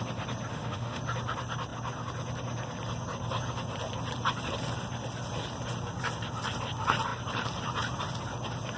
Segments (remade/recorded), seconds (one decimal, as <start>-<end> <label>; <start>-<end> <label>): 0.0-0.5 recorded; 0.5-1.0 remade; 1.0-8.8 recorded